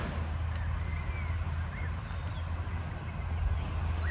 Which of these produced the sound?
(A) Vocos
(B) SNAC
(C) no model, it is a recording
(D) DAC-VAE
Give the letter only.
C